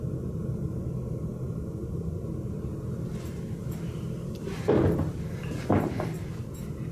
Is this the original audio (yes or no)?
no